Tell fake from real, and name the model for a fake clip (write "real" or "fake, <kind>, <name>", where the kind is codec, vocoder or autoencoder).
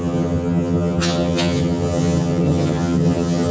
fake, vocoder, HiFi-GAN